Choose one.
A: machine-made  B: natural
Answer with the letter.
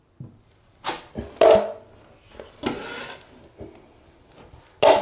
B